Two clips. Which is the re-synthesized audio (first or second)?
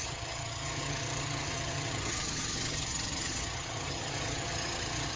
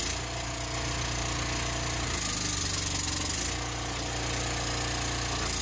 first